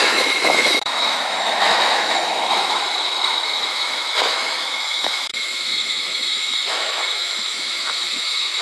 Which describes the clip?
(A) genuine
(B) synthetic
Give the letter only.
B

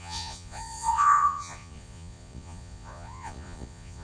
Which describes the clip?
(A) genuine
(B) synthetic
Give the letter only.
B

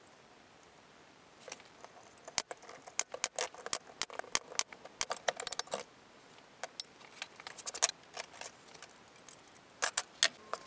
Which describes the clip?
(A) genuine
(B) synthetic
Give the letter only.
A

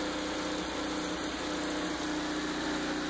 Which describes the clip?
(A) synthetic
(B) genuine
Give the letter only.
B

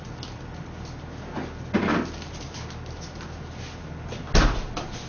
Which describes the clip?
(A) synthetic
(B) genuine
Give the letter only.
B